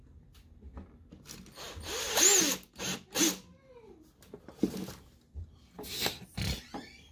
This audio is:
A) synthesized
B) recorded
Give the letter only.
B